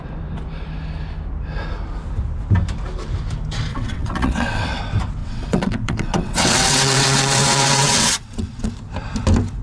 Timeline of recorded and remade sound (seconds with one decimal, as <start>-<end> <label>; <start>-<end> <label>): 0.0-3.7 recorded; 3.7-4.8 remade; 4.8-5.2 recorded; 5.2-8.7 remade; 8.7-9.6 recorded